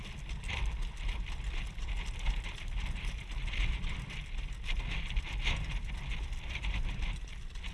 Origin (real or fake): fake